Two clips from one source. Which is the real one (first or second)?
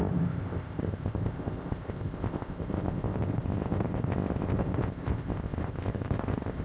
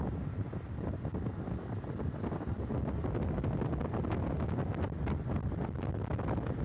second